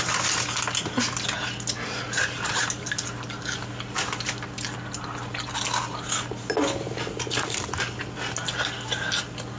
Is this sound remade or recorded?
recorded